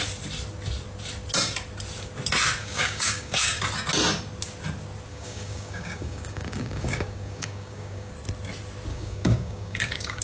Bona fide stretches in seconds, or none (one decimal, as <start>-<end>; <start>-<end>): 0.0-2.6; 3.6-5.1; 8.1-8.9